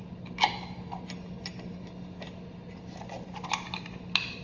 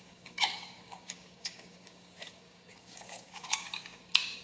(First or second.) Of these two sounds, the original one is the first